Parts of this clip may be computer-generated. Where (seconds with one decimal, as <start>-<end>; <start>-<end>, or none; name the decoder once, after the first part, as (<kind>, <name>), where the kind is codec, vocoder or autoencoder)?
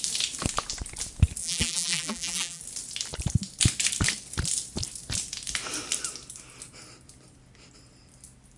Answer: 1.4-2.6 (vocoder, BigVGAN v2)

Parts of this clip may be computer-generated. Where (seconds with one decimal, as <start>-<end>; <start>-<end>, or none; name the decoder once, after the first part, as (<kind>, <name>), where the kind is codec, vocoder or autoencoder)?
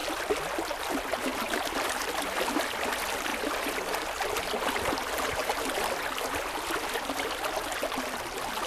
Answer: none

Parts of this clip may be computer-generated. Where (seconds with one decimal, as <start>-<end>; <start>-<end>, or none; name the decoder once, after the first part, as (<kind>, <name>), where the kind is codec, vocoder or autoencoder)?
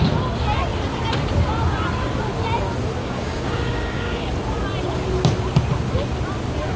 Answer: 3.0-4.3 (codec, DAC)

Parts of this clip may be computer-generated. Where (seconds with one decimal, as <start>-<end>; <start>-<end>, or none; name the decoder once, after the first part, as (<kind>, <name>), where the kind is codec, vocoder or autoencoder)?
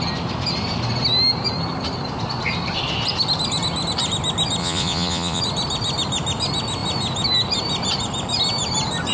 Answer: 4.6-5.4 (vocoder, Vocos)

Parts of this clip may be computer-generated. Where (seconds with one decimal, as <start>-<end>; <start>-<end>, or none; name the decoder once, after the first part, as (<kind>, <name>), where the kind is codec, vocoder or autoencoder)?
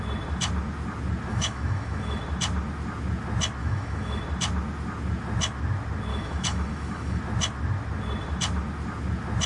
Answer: 1.3-2.2 (autoencoder, DAC-VAE); 3.6-4.2; 6.1-7.2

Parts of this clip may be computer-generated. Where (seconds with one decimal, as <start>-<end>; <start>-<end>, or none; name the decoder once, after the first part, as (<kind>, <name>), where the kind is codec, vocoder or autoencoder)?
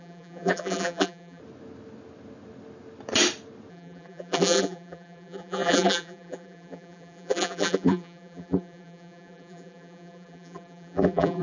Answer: 0.0-1.4 (vocoder, BigVGAN v2); 3.7-11.4